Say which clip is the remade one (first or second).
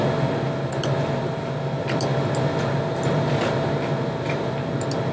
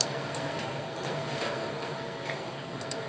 second